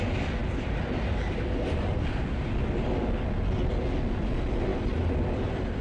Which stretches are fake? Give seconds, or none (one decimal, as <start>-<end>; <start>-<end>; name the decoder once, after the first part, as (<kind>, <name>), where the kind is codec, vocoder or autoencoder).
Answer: 0.4-2.9 (vocoder, BigVGAN v2)